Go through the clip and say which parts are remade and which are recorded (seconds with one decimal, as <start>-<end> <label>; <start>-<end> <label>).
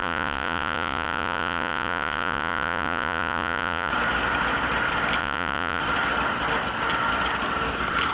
0.0-3.9 remade; 3.9-5.2 recorded; 5.2-5.8 remade; 5.8-8.1 recorded